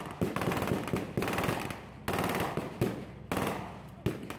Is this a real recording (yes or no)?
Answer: yes